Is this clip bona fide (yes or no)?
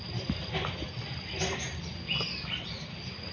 yes